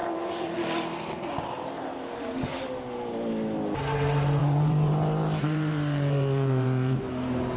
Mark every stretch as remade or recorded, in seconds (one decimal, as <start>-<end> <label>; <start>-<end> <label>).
0.0-1.0 remade; 1.0-4.4 recorded; 4.4-7.1 remade; 7.1-7.6 recorded